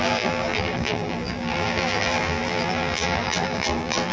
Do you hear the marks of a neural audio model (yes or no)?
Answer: yes